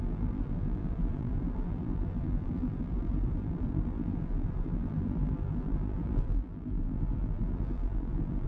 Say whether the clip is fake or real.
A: fake